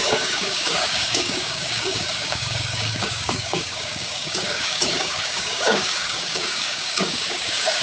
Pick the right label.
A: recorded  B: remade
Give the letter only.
B